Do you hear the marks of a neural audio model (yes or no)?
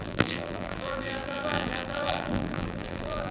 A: yes